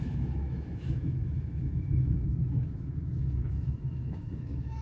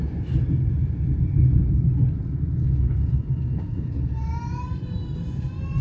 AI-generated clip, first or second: first